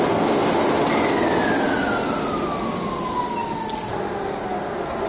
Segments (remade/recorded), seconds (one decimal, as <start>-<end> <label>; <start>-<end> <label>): 0.0-5.1 recorded